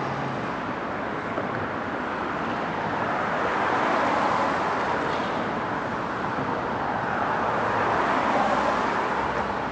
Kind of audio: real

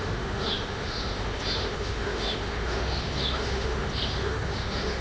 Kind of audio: fake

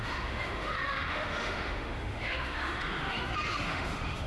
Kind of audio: fake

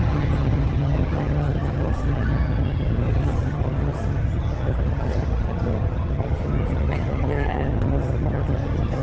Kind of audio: fake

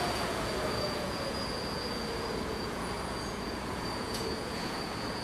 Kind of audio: fake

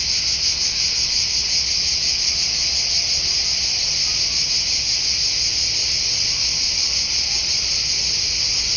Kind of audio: real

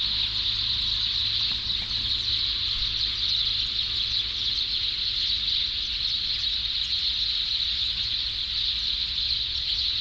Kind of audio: real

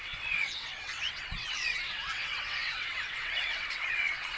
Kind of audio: fake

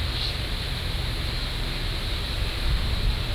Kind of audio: real